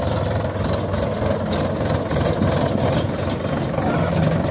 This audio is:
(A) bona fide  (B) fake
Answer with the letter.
A